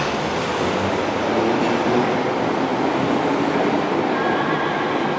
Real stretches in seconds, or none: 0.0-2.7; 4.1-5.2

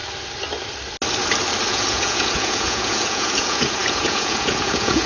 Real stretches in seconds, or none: 0.0-1.7

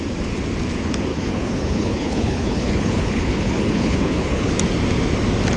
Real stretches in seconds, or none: 0.0-1.1; 4.5-5.6

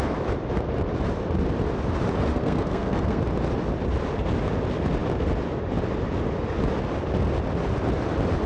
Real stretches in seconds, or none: 0.0-2.3; 3.2-8.5

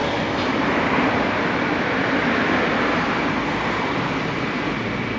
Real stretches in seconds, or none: 3.1-5.2

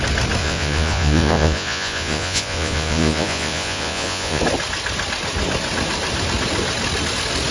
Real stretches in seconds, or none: 0.0-0.4; 4.4-7.5

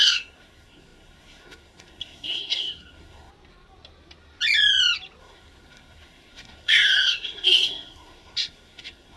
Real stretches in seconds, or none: 3.3-5.2